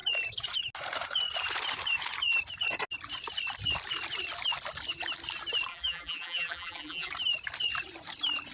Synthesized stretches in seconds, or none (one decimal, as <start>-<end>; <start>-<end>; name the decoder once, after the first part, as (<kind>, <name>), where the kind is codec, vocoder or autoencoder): 5.7-7.1 (vocoder, BigVGAN v2)

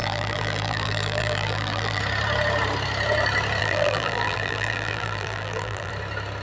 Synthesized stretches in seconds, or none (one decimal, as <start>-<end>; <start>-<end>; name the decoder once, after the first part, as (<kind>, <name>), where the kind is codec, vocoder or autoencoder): 0.0-2.0 (vocoder, BigVGAN v2); 3.6-5.9